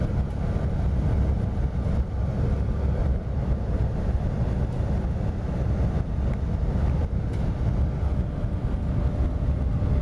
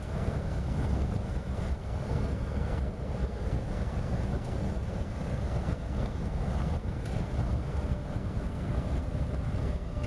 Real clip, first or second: first